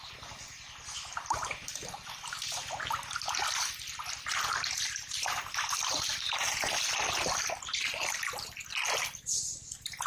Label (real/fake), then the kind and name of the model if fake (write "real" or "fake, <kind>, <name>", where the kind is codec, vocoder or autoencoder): real